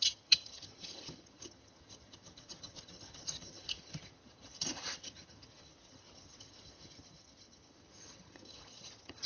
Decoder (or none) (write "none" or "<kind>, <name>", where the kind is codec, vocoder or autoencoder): vocoder, HiFi-GAN